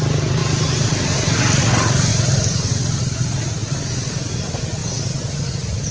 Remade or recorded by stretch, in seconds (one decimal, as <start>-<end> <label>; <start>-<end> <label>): 0.0-2.1 recorded; 2.1-2.7 remade; 2.7-3.6 recorded; 3.6-4.3 remade; 4.3-4.8 recorded; 4.8-5.9 remade